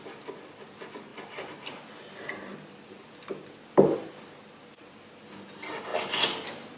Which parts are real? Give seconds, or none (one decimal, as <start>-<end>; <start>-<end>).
0.0-6.8